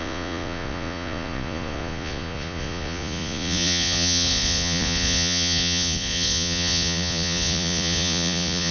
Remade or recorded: remade